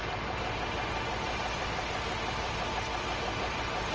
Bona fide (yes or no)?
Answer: yes